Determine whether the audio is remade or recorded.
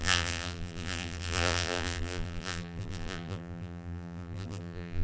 remade